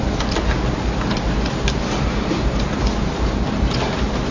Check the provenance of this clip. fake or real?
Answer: real